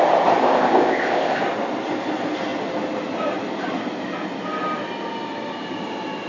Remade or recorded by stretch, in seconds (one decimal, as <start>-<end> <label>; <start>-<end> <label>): 0.0-0.4 recorded; 0.4-1.4 remade; 1.4-6.3 recorded